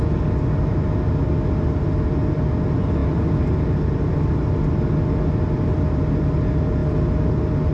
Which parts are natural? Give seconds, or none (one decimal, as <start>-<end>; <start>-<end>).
0.0-7.7